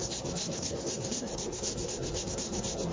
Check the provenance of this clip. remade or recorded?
remade